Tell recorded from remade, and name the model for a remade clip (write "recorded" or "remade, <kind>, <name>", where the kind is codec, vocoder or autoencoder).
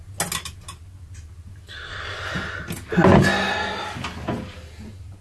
recorded